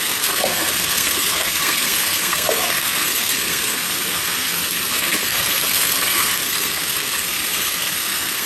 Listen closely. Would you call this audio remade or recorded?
remade